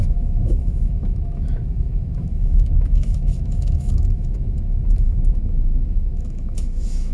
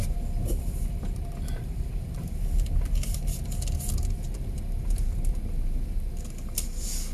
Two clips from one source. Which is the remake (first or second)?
first